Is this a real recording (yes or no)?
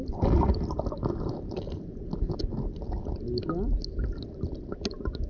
yes